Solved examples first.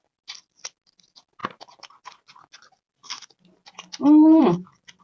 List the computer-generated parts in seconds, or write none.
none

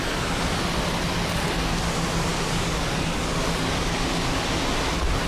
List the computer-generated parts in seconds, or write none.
2.3-4.4 (codec, DAC)

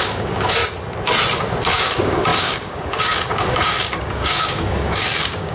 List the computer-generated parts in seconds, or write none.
0.0-0.6 (codec, DAC); 1.6-5.5

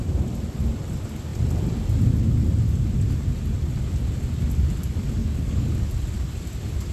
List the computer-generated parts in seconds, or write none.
5.2-5.7 (codec, DAC)